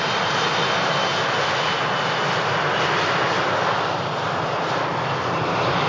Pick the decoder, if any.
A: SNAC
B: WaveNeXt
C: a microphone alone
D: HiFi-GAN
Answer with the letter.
C